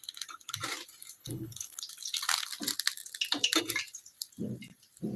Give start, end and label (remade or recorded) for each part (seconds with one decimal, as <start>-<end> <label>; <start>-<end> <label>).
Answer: 0.0-1.2 recorded; 1.2-1.8 remade; 1.8-5.2 recorded